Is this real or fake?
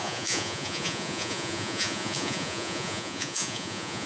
fake